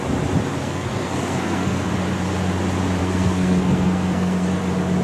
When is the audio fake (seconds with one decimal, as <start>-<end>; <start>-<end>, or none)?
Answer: 0.6-1.9; 3.0-4.6